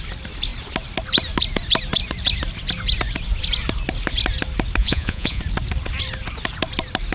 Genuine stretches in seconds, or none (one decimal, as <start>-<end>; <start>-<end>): 0.0-4.8; 5.4-7.1